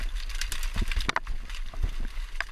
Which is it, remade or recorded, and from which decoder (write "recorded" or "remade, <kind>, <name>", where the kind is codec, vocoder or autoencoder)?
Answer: recorded